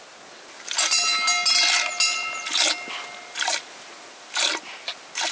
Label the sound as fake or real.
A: real